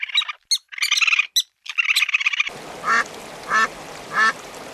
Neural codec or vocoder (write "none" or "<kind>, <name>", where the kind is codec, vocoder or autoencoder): none